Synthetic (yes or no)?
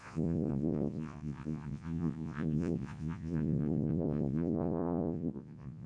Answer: yes